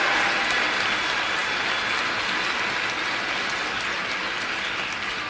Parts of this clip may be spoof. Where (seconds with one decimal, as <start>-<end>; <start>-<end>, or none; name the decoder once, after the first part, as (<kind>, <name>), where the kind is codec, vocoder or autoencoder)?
none